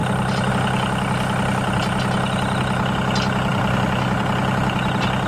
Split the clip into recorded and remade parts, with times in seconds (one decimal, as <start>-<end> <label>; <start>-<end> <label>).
0.0-5.3 recorded